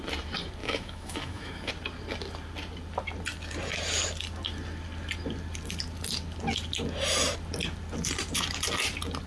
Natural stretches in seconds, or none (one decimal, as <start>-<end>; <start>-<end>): 0.0-0.6; 1.7-9.3